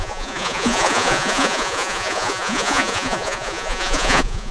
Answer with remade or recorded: remade